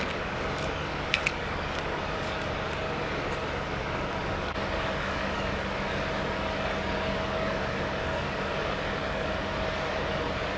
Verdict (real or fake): fake